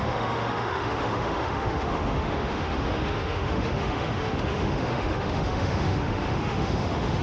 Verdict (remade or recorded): remade